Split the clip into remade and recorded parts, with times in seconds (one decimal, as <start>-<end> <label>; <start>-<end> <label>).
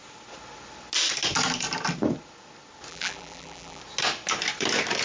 0.0-2.9 recorded; 2.9-3.8 remade; 3.8-5.0 recorded